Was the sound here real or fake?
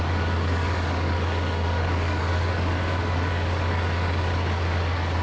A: fake